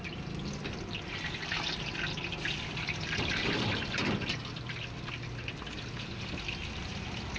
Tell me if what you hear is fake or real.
real